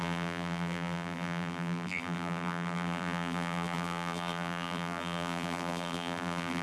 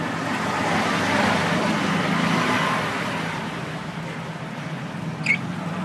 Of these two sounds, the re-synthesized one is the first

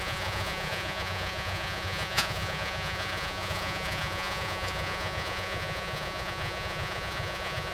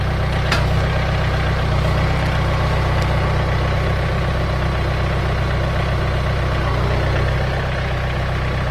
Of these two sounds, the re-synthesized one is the first